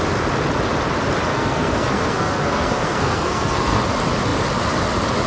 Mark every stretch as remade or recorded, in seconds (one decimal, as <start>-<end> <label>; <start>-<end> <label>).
0.0-1.3 recorded; 1.3-3.8 remade; 3.8-5.3 recorded